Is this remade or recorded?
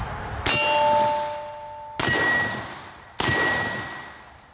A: recorded